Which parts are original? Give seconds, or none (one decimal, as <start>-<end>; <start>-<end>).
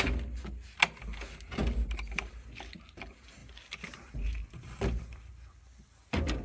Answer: 0.0-6.4